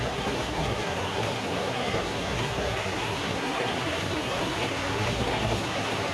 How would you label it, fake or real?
fake